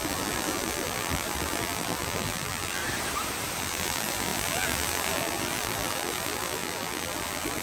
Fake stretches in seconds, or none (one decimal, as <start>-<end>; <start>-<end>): 0.0-2.8; 3.6-7.6